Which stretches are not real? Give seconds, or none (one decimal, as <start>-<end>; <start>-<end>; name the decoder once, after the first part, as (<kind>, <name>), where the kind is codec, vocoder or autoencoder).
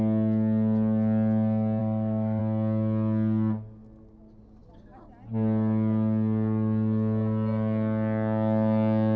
1.8-2.4 (autoencoder, DAC-VAE)